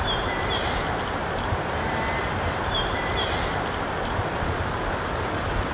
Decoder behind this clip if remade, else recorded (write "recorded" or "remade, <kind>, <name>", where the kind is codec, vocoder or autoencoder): remade, vocoder, BigVGAN v2